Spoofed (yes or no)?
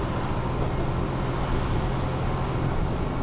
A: no